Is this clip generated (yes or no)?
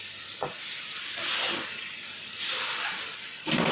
yes